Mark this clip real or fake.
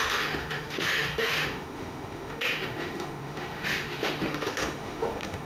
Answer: fake